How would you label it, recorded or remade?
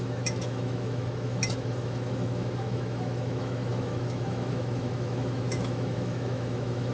remade